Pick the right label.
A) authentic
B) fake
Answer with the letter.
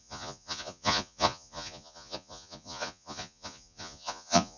B